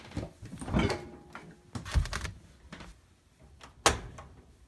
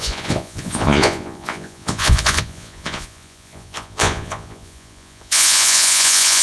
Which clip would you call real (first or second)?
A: first